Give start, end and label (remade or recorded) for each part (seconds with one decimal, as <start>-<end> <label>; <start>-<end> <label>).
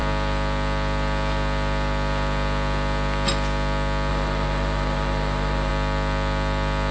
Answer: 0.0-4.1 recorded; 4.1-5.7 remade; 5.7-6.9 recorded